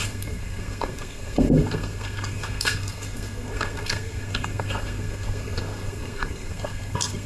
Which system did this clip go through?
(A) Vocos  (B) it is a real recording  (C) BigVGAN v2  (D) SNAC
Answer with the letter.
D